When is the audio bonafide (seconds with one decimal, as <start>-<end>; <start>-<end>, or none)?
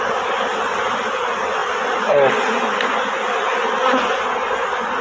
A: 0.0-5.0